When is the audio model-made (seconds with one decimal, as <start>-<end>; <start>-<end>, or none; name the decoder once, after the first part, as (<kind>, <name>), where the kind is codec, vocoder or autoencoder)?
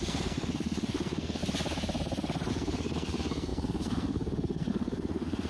0.0-1.4 (codec, SNAC); 2.5-5.5